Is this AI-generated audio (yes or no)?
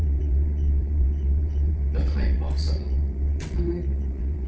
yes